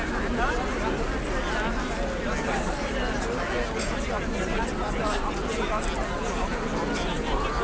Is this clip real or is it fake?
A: real